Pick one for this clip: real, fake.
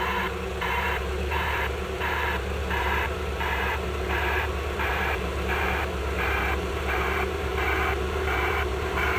fake